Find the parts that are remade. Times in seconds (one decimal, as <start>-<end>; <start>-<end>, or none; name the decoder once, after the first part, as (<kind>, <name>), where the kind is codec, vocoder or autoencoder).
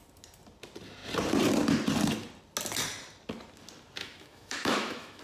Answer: 4.0-5.2 (autoencoder, DAC-VAE)